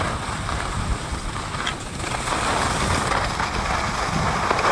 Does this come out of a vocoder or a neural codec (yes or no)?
no